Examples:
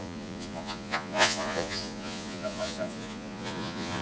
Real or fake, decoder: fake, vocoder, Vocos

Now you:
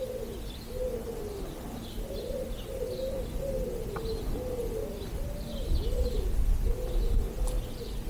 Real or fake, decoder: real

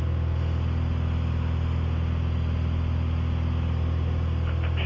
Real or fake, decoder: real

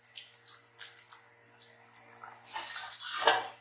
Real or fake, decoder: real